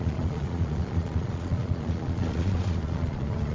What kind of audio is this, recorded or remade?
remade